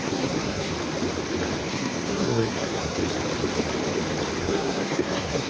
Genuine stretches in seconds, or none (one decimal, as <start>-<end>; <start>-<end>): 0.7-1.7; 3.0-4.4